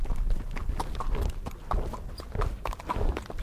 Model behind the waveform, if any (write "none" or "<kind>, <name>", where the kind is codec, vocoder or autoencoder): none